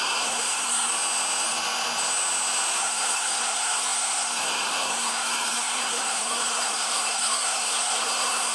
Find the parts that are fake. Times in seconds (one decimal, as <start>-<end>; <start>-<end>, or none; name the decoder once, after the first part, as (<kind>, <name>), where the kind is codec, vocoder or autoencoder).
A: 0.0-0.9 (codec, SNAC); 2.8-8.5